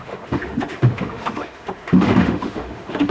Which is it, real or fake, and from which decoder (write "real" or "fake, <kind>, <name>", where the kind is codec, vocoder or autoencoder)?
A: fake, autoencoder, DAC-VAE